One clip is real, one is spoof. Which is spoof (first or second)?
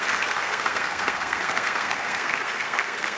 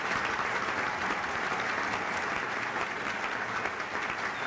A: first